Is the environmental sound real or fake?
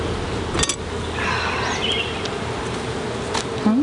real